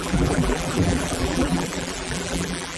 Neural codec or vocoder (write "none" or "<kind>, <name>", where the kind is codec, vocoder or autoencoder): vocoder, BigVGAN v2